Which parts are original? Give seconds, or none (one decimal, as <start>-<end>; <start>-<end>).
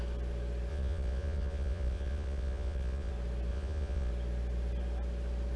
0.0-0.7; 3.1-3.5; 4.1-5.6